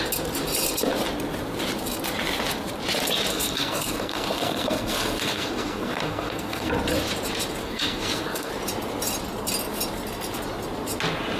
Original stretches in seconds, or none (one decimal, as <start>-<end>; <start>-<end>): 0.0-3.3; 6.7-7.6; 8.5-11.4